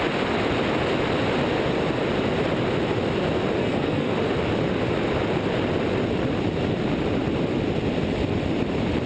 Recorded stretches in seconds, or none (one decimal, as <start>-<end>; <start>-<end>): 0.0-3.6; 4.1-9.1